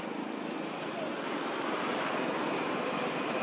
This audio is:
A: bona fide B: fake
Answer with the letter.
A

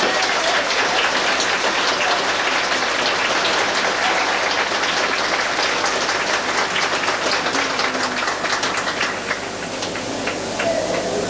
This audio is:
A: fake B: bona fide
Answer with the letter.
B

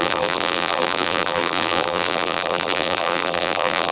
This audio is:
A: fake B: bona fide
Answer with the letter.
A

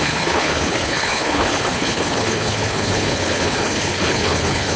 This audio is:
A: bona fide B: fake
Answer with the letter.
B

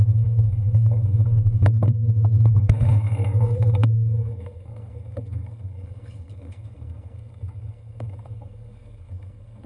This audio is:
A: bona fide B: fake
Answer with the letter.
B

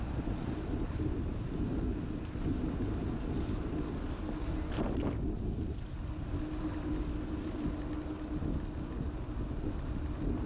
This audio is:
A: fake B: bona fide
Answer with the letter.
B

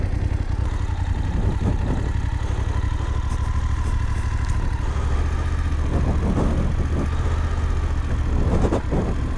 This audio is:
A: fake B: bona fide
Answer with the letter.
B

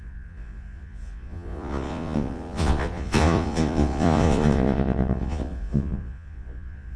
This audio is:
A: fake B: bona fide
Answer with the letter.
A